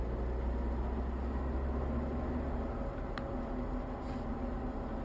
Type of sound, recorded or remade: recorded